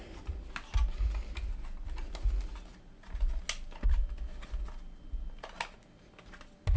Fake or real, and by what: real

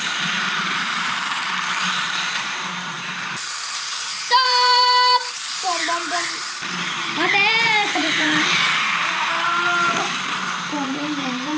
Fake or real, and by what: fake, vocoder, BigVGAN v2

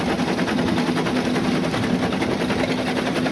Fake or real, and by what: real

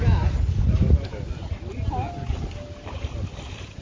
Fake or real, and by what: real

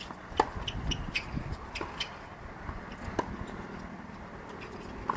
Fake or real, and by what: real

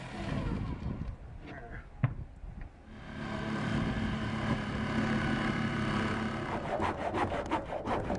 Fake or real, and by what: real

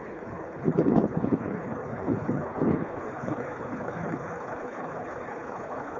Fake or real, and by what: fake, codec, HILCodec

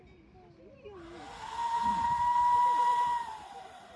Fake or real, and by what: real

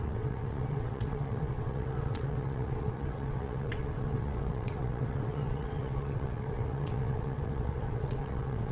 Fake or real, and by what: fake, vocoder, WaveNeXt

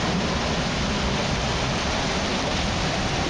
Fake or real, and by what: real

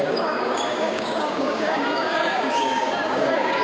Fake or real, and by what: fake, codec, DAC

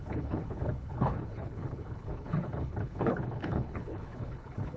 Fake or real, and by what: fake, codec, HILCodec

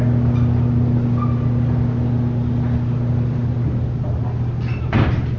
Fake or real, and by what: real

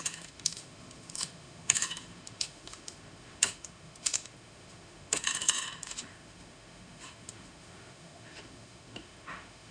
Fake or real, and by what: fake, autoencoder, DAC-VAE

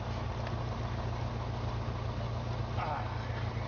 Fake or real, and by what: real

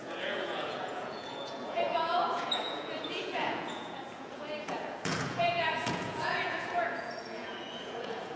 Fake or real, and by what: fake, vocoder, Vocos